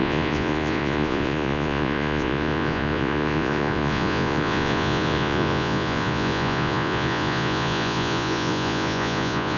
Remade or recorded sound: remade